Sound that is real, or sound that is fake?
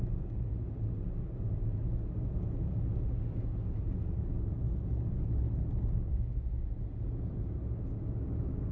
real